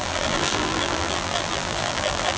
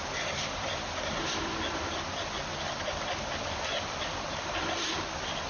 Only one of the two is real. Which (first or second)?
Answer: second